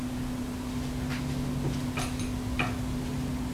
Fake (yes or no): no